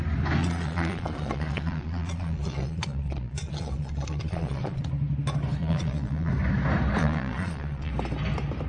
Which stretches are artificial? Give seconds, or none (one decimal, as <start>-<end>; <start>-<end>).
0.4-4.9; 5.6-6.3; 7.0-7.9